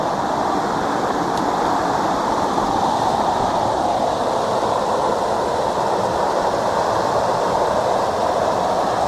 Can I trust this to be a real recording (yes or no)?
yes